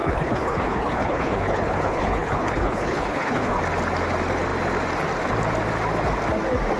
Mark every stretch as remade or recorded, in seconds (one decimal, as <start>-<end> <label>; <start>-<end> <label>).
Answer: 0.0-3.6 remade; 3.6-6.8 recorded

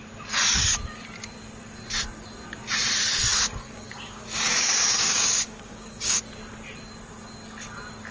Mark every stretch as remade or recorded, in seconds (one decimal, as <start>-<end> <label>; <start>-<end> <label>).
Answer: 0.0-3.3 recorded; 3.3-6.2 remade; 6.2-8.1 recorded